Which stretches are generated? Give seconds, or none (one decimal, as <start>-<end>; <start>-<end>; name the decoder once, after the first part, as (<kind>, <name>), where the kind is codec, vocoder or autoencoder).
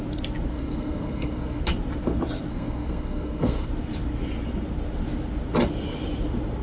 0.5-1.6 (codec, SNAC); 2.5-3.7